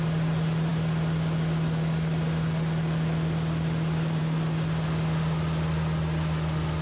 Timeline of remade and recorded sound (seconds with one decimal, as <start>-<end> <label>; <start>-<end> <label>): 0.0-6.8 recorded